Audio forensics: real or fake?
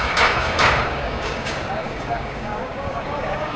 fake